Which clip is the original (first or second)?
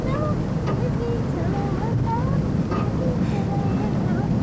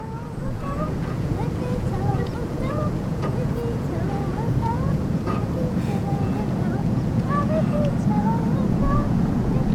first